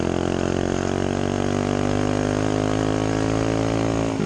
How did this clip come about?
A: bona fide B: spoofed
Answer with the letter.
A